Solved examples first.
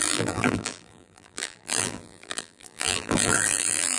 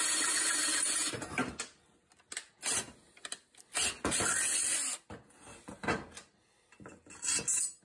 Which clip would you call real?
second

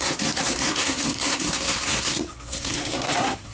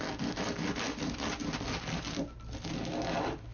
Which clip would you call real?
second